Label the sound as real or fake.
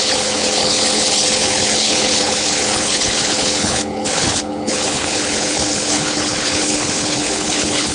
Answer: fake